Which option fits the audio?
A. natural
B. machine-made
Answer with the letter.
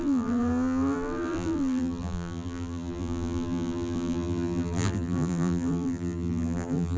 B